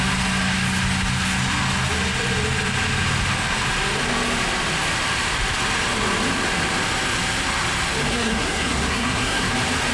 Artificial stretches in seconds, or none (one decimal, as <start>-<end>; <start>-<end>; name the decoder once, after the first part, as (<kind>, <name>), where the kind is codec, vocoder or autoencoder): 8.1-9.5 (codec, SNAC)